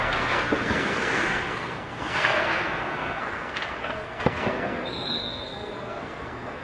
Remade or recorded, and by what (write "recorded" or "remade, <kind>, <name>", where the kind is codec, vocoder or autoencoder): remade, codec, SNAC